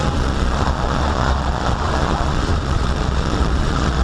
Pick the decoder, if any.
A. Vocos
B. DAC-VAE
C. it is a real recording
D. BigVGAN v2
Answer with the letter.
A